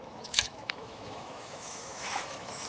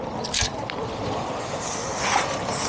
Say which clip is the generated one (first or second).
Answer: first